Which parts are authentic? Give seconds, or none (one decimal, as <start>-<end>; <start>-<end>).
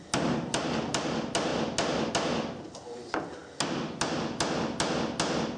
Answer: 0.0-5.6